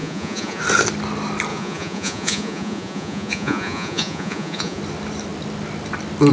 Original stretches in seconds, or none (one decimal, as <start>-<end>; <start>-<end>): 0.6-1.5; 4.8-6.3